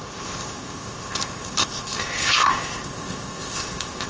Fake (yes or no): yes